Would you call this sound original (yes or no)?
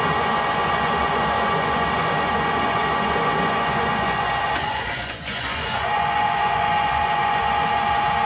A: no